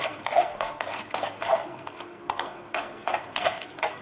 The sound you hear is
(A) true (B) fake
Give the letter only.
B